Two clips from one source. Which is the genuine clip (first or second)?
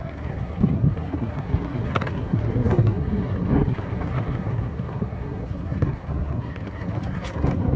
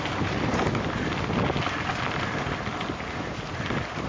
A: second